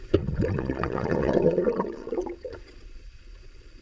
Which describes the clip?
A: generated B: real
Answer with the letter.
A